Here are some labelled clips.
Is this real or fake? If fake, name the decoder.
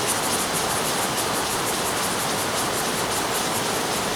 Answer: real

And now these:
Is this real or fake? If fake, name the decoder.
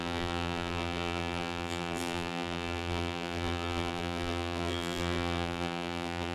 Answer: fake, vocoder, BigVGAN v2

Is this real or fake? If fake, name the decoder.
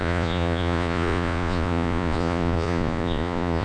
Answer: fake, vocoder, Vocos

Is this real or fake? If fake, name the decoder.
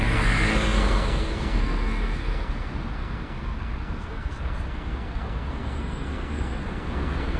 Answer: fake, codec, SNAC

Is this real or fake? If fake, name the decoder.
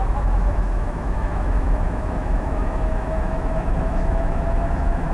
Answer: fake, autoencoder, DAC-VAE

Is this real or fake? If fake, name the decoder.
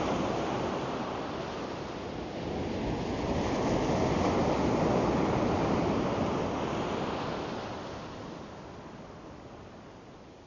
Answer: real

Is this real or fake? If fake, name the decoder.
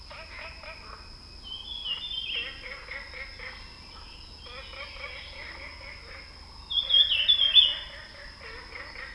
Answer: real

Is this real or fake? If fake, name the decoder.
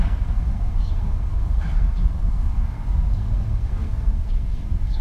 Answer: fake, codec, SNAC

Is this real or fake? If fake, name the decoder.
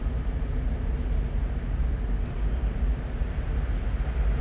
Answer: real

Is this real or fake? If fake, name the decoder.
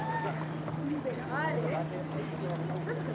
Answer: real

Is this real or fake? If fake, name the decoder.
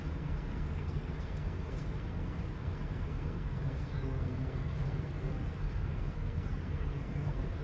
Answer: fake, codec, SNAC